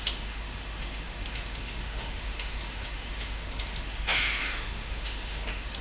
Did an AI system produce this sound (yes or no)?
yes